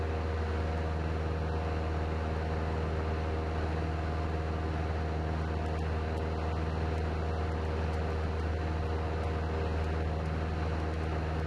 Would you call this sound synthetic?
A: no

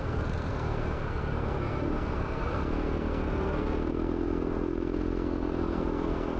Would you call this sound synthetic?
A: yes